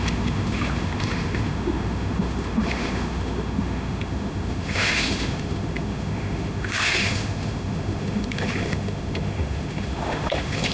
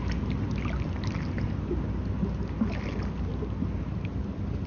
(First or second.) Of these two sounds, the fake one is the first